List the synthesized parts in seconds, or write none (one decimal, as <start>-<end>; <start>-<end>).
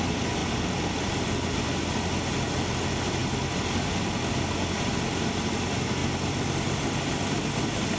0.4-2.3